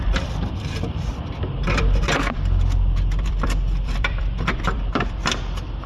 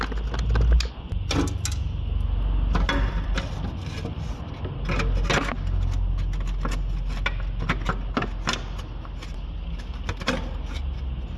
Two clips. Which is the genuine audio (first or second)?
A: second